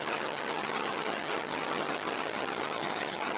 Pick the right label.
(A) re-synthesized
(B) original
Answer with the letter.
A